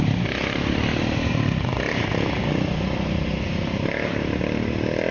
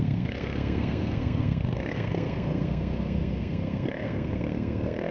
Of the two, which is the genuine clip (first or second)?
first